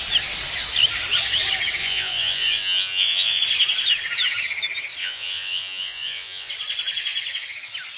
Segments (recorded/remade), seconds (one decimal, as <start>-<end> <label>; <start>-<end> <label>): 0.0-1.8 recorded; 1.8-3.4 remade; 3.4-5.0 recorded; 5.0-6.5 remade; 6.5-8.0 recorded